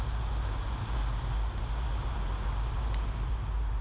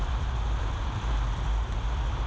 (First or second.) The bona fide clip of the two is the first